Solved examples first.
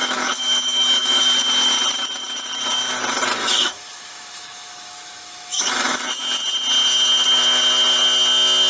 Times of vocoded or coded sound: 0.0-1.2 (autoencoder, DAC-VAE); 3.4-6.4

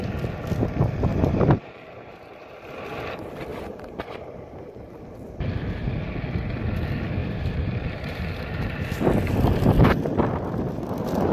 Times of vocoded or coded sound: 1.1-2.7 (vocoder, BigVGAN v2); 3.5-5.0; 7.2-8.9

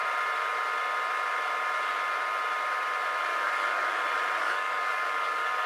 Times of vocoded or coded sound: 3.3-4.0 (codec, DAC); 4.4-5.7

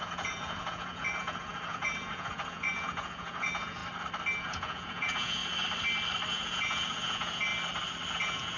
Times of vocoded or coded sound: 0.0-3.8 (vocoder, Vocos); 4.4-5.4; 6.3-7.5; 8.1-8.6